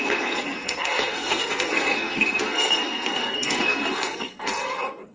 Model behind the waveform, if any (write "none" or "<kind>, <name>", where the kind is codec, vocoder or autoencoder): codec, SNAC